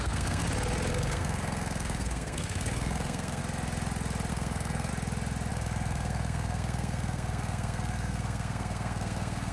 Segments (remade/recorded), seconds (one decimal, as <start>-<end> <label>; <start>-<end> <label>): 0.0-0.4 remade; 0.4-0.9 recorded; 0.9-3.4 remade; 3.4-4.3 recorded; 4.3-4.9 remade; 4.9-5.5 recorded; 5.5-9.5 remade